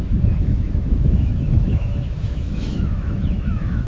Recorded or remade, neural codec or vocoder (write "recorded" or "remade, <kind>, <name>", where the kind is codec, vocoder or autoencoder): remade, autoencoder, DAC-VAE